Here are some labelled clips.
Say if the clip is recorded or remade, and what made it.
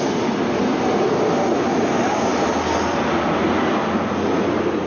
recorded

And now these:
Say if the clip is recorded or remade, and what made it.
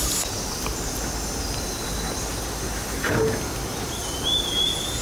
recorded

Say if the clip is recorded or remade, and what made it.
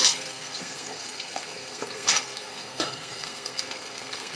remade, codec, SNAC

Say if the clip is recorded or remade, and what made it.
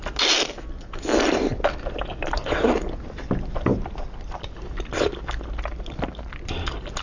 recorded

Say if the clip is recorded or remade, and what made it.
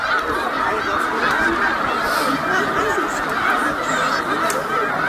recorded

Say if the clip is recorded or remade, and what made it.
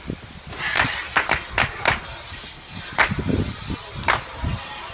recorded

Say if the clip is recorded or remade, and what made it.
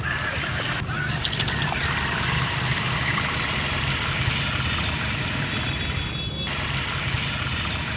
recorded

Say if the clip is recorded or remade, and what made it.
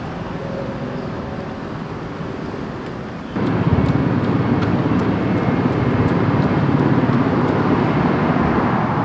recorded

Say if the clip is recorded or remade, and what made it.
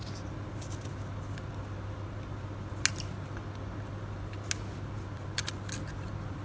recorded